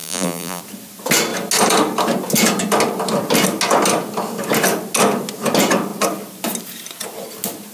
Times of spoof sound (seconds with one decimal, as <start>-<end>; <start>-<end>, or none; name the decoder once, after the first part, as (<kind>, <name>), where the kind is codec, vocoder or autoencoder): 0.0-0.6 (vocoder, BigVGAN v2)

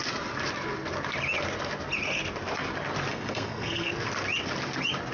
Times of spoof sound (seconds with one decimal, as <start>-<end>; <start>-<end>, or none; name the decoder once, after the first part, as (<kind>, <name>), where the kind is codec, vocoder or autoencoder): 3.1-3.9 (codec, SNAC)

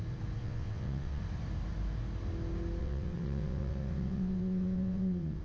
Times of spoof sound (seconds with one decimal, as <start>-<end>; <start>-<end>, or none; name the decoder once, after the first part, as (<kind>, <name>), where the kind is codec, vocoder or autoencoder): 0.4-1.2 (vocoder, WaveNeXt); 2.8-5.4